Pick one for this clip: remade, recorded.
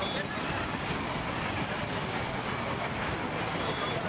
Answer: remade